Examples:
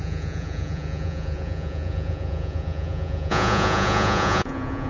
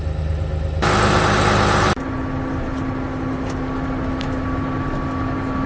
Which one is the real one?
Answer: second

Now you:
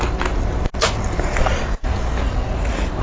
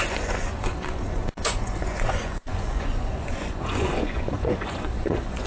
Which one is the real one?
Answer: first